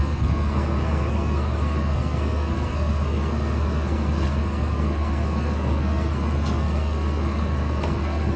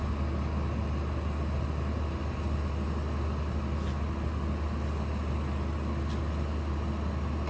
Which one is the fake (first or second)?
first